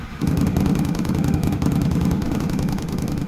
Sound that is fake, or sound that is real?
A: fake